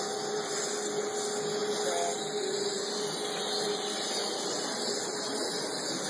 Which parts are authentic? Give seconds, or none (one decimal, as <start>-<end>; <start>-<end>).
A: 0.0-6.1